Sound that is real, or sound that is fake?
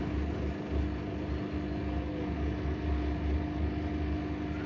real